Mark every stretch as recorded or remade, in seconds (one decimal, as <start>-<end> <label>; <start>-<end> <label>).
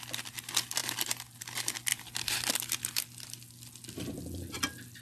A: 0.0-5.0 recorded